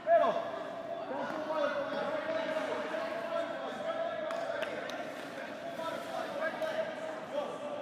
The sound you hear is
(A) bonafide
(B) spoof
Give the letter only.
A